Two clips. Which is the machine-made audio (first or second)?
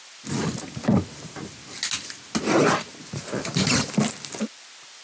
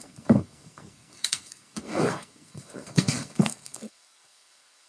second